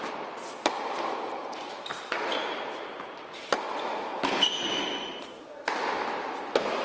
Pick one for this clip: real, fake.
real